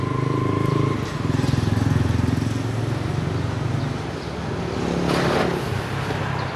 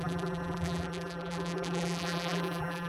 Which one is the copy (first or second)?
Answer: second